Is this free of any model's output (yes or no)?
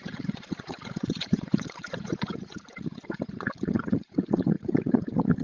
no